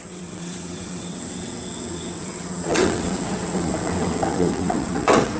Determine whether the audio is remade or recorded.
remade